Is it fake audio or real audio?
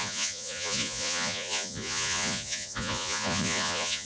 fake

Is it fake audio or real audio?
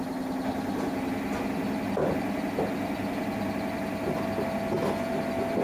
real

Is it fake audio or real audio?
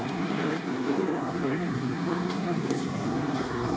fake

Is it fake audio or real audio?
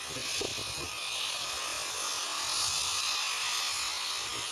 real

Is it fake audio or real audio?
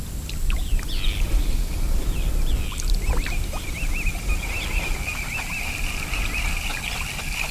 real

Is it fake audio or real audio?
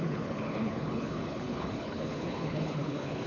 fake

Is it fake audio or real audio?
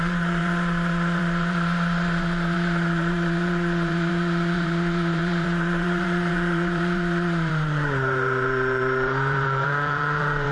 fake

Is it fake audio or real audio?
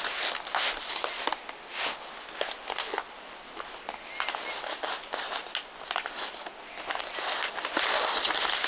real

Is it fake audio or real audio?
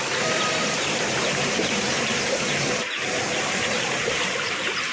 fake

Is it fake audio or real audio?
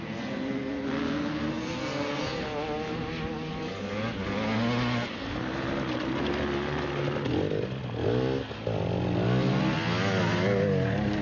real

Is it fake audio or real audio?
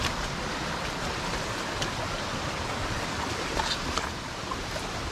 real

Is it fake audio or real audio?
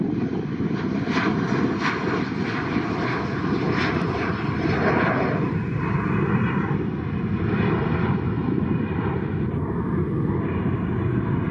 real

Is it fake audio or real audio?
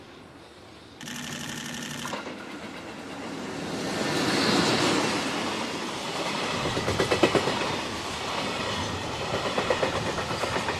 real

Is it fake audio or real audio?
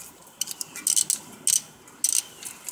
real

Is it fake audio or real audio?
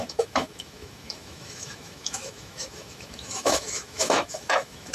fake